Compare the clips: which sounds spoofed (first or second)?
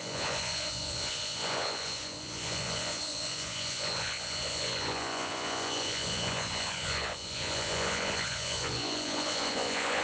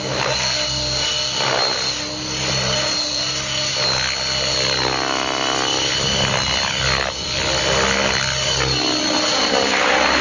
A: first